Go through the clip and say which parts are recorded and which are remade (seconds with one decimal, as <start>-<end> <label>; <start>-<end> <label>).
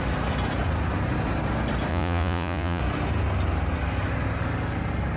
0.0-1.9 recorded; 1.9-2.8 remade; 2.8-5.2 recorded